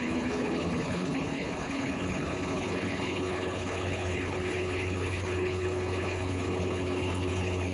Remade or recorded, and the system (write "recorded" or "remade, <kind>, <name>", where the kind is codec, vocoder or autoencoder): remade, codec, HILCodec